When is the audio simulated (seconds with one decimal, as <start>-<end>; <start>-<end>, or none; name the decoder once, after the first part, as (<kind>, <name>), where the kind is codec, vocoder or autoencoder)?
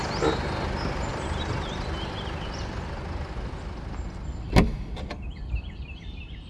none